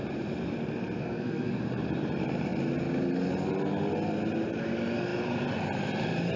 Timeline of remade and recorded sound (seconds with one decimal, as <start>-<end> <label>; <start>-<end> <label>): 0.0-1.0 recorded; 1.0-1.6 remade; 1.6-6.4 recorded